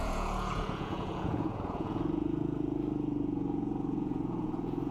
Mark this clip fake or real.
fake